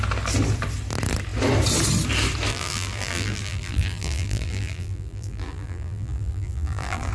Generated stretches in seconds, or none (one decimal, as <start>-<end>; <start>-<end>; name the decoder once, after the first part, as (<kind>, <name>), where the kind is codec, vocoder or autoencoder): 2.5-7.1 (vocoder, BigVGAN v2)